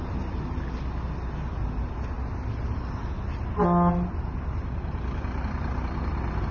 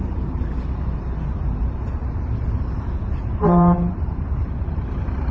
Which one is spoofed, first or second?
second